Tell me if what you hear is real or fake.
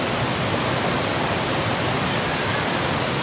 real